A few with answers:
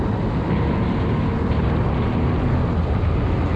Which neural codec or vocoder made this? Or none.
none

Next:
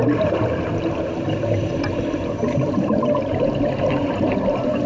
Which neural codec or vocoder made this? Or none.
vocoder, BigVGAN v2